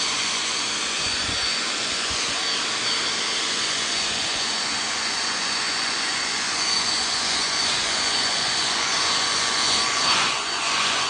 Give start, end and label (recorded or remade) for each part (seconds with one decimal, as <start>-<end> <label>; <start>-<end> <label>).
0.0-2.4 remade; 2.4-3.4 recorded; 3.4-11.1 remade